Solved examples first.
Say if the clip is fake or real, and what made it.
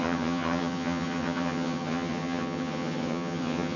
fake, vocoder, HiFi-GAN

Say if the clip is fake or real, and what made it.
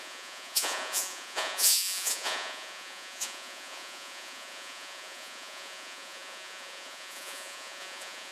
fake, vocoder, Vocos